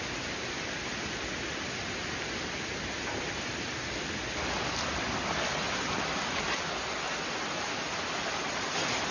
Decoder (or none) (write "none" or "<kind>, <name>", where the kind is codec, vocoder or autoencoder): none